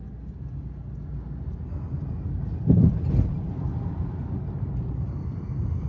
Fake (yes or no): no